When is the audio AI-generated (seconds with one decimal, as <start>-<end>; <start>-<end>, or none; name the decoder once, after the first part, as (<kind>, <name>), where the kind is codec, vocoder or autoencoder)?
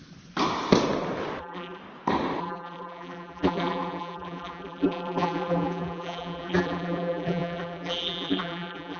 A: 1.4-1.8 (vocoder, BigVGAN v2); 2.4-9.0